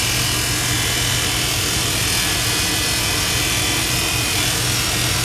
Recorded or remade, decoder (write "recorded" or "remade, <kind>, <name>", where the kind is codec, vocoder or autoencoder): recorded